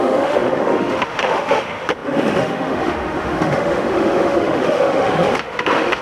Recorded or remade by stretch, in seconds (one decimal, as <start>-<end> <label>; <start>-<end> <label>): 0.0-6.0 remade